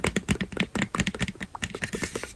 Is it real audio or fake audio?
real